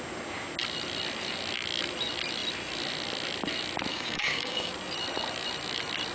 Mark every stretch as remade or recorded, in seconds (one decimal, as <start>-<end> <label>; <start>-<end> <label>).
0.0-3.9 recorded; 3.9-4.7 remade; 4.7-6.1 recorded